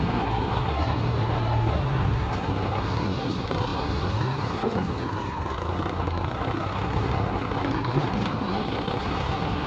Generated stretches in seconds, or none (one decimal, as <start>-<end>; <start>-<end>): 0.0-9.7